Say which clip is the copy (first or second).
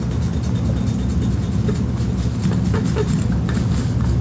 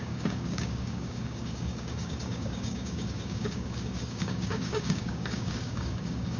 second